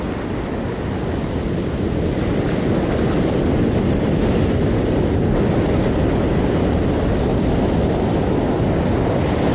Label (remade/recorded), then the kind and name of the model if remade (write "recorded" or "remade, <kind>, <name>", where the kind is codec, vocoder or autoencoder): recorded